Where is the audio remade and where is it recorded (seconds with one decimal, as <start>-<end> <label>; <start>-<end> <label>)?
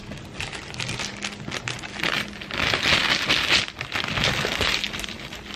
0.0-5.6 recorded